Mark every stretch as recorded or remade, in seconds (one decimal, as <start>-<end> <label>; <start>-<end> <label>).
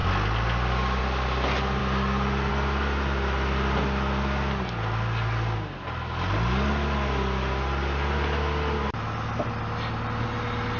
0.0-10.8 recorded